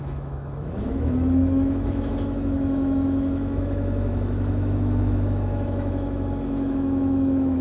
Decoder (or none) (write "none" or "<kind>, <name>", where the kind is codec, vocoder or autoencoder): autoencoder, DAC-VAE